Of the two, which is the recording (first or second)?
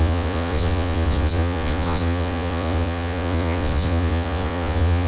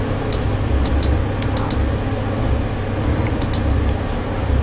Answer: second